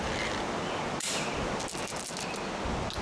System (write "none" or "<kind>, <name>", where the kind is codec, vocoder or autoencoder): none